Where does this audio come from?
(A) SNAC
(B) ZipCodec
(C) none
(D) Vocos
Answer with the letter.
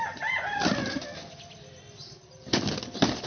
C